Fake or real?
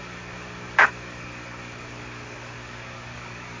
fake